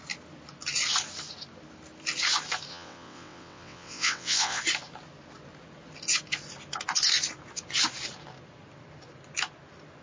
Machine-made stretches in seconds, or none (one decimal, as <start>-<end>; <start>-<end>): 2.7-4.6